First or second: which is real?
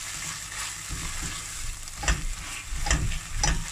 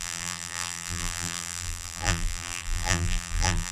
first